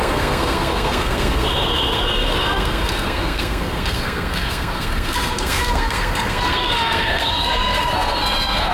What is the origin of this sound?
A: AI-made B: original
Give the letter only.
A